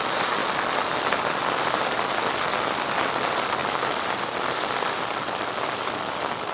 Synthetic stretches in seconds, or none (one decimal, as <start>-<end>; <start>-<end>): none